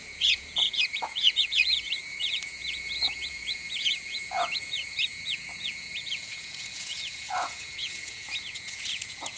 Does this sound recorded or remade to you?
remade